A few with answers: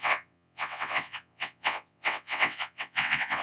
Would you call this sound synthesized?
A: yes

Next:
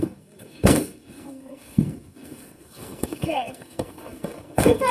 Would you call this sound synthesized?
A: yes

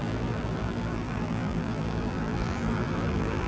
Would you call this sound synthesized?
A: yes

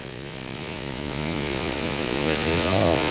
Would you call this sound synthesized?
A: yes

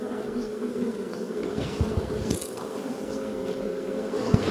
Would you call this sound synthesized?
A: yes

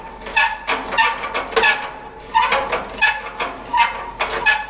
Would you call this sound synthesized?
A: no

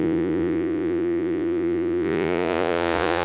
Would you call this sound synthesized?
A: yes